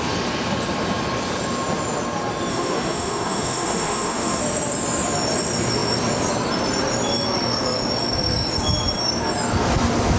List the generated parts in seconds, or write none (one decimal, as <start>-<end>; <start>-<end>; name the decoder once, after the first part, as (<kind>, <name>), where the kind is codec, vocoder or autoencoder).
2.5-4.4 (autoencoder, DAC-VAE)